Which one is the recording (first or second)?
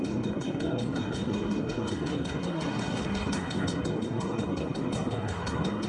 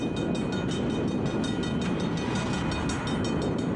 second